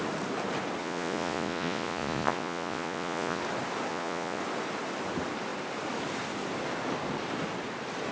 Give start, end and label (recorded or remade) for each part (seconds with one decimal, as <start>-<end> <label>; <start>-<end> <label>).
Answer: 0.0-0.8 recorded; 0.8-3.4 remade; 3.4-3.9 recorded; 3.9-4.4 remade; 4.4-8.1 recorded